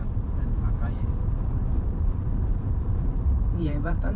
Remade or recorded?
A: remade